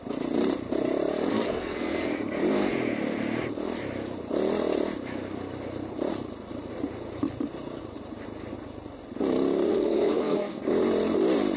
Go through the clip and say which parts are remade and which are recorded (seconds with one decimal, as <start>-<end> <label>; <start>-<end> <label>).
0.0-1.3 recorded; 1.3-2.2 remade; 2.2-9.7 recorded; 9.7-10.6 remade; 10.6-11.6 recorded